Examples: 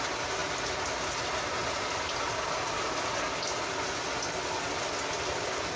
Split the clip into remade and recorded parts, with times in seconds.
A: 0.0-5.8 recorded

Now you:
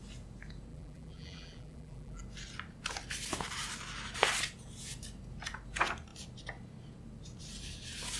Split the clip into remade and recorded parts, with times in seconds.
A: 0.0-0.7 recorded; 0.7-2.2 remade; 2.2-8.2 recorded